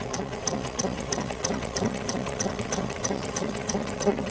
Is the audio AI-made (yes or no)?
yes